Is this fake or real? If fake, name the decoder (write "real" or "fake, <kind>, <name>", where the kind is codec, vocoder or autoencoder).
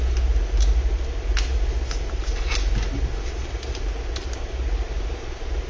real